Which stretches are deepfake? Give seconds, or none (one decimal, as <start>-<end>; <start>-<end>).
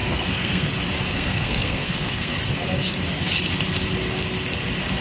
0.0-0.7; 1.1-2.4